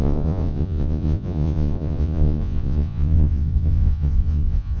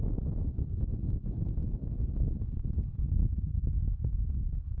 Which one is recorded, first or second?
second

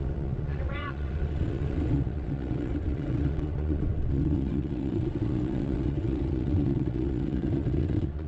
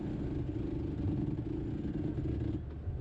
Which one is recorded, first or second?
second